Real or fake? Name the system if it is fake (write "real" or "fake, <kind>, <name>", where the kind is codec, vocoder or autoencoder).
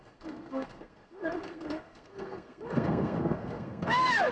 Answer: fake, codec, SNAC